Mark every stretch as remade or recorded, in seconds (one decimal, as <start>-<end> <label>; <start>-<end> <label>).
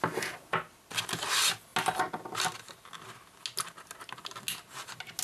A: 0.0-5.2 recorded